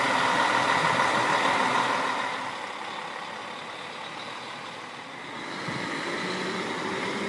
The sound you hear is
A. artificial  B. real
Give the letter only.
B